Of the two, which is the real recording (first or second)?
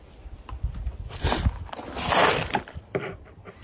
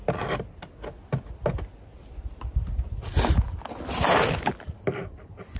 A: second